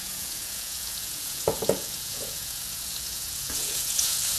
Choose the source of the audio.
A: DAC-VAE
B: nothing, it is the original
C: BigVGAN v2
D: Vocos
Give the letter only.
D